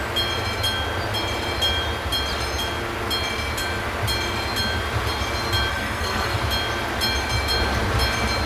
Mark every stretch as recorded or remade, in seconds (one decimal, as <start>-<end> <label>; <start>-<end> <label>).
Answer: 0.0-5.7 recorded; 5.7-6.4 remade; 6.4-8.5 recorded